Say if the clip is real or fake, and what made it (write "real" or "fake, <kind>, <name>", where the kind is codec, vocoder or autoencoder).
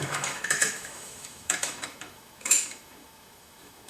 fake, autoencoder, DAC-VAE